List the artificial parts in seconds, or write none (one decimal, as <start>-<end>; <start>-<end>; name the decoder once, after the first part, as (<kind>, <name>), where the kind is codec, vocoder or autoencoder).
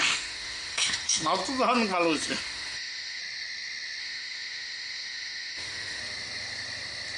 0.0-1.4 (autoencoder, DAC-VAE); 2.4-3.2; 4.0-6.0